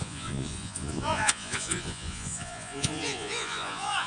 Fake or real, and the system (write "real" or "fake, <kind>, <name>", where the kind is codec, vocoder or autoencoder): fake, vocoder, Vocos